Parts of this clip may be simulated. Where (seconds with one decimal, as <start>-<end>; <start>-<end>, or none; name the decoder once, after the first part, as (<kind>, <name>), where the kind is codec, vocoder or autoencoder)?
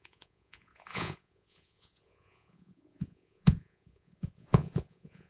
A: 0.0-5.3 (vocoder, Vocos)